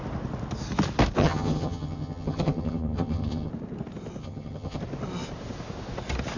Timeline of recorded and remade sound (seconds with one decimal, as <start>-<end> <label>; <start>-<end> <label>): 0.0-1.2 recorded; 1.2-3.5 remade; 3.5-4.2 recorded; 4.2-4.8 remade; 4.8-6.4 recorded